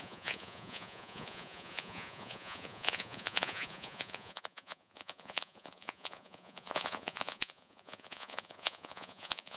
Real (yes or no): no